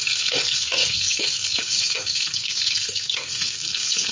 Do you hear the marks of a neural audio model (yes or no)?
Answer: yes